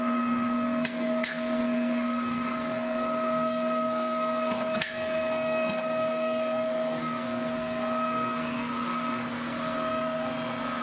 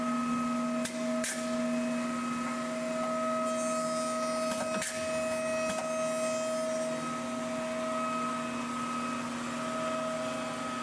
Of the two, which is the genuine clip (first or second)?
second